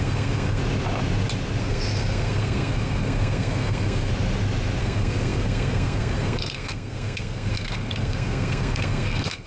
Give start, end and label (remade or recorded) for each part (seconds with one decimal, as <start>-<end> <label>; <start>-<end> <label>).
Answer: 0.0-0.6 remade; 0.6-1.6 recorded; 1.6-4.1 remade; 4.1-4.8 recorded; 4.8-9.5 remade